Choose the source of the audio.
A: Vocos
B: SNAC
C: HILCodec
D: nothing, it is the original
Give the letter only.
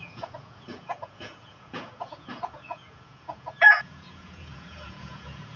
A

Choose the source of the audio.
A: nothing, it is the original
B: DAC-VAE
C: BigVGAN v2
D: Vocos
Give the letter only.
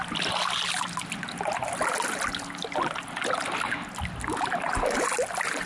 A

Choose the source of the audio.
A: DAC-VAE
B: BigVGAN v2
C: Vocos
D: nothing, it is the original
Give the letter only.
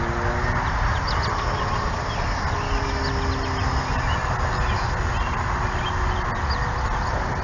D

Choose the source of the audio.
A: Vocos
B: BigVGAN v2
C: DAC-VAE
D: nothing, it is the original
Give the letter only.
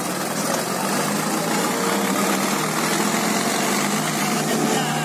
D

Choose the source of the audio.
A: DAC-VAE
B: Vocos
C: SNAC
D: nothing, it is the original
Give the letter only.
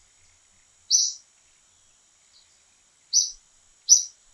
D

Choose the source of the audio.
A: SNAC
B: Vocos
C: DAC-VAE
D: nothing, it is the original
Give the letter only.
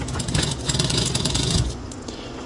B